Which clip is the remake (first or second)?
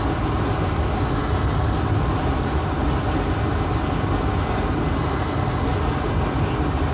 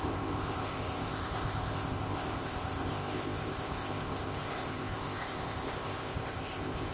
second